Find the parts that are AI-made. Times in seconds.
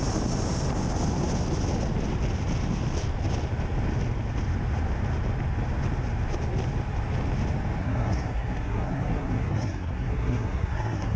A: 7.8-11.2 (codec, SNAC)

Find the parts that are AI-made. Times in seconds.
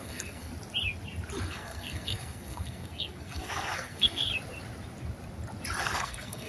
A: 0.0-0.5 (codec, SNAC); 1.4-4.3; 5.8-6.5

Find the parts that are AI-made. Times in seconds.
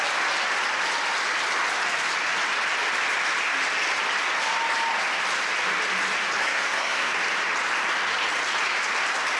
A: 6.4-7.1 (codec, SNAC)